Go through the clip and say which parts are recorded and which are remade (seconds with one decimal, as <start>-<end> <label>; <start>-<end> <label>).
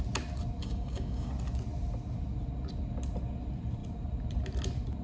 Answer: 0.0-0.6 recorded; 0.6-1.3 remade; 1.3-5.0 recorded